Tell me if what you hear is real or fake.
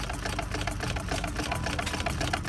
real